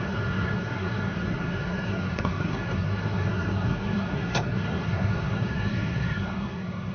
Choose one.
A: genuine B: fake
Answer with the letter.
B